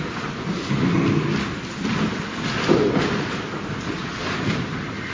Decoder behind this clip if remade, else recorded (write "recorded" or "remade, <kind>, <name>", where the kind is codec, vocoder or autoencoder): recorded